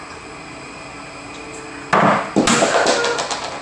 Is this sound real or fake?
real